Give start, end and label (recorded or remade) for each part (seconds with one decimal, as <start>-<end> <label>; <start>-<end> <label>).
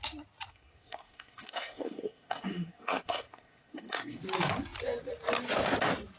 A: 0.0-0.5 recorded; 0.5-4.2 remade; 4.2-6.2 recorded